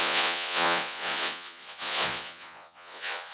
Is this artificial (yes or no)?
yes